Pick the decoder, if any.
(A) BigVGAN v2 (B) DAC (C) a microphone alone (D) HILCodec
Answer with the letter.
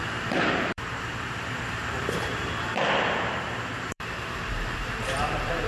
A